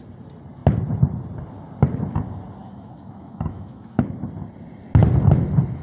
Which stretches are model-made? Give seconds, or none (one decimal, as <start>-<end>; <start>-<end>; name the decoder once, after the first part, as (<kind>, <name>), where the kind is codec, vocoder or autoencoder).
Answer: 2.6-4.2 (autoencoder, DAC-VAE)